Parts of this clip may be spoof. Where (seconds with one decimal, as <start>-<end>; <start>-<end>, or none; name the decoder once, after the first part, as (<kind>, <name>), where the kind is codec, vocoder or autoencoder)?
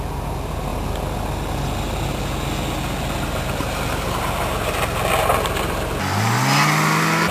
none